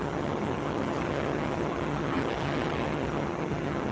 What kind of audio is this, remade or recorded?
remade